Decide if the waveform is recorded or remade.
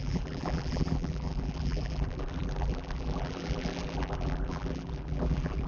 remade